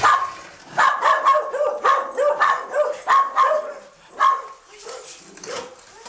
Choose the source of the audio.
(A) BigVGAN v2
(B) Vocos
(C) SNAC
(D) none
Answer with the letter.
D